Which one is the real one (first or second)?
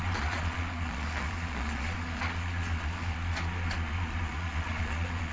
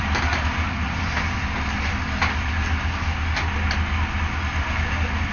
second